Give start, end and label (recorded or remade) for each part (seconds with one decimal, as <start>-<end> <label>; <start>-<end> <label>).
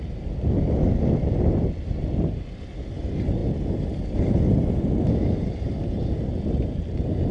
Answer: 0.0-7.3 recorded